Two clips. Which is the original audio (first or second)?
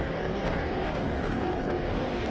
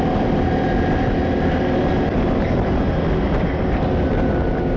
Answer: second